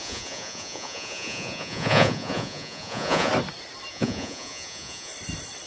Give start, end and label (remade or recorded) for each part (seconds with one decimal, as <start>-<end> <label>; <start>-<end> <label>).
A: 0.0-3.3 remade; 3.3-3.9 recorded; 3.9-5.1 remade; 5.1-5.7 recorded